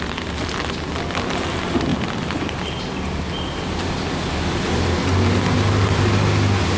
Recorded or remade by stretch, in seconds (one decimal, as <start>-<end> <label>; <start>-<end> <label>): 0.0-6.8 recorded